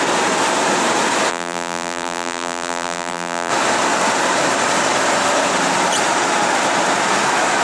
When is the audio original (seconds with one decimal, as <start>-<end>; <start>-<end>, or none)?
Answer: 0.0-1.3; 3.5-7.6